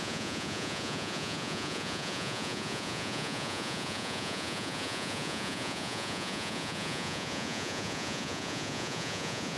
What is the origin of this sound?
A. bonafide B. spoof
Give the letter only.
B